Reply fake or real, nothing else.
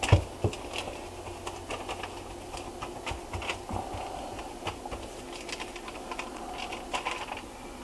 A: real